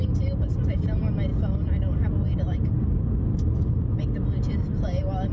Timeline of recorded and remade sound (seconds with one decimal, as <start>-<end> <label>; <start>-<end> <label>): 0.0-5.3 recorded